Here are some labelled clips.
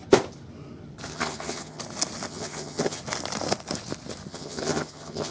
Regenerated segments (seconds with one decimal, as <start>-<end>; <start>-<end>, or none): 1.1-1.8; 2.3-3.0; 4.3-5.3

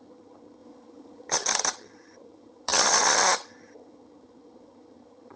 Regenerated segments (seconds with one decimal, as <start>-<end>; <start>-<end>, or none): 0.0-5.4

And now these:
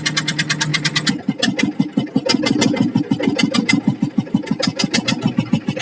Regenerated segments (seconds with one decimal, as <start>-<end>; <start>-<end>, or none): none

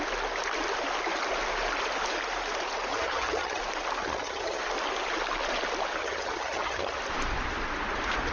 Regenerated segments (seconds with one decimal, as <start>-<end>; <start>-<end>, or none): 2.9-3.6; 4.0-4.6; 6.0-7.0

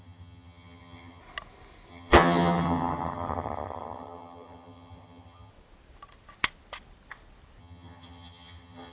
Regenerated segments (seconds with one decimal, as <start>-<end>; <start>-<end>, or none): 0.0-1.2; 1.9-5.5; 7.6-8.9